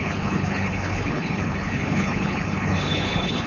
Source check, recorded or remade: remade